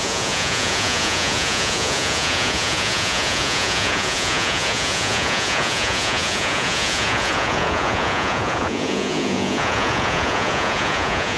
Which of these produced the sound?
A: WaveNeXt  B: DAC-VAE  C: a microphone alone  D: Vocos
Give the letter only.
D